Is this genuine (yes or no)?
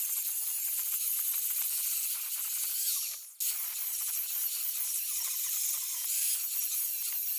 yes